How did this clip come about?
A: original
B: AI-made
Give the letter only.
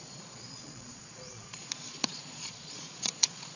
B